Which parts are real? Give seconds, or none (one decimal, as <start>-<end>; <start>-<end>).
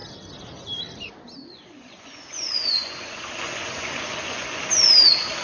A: 0.0-1.4; 4.6-5.4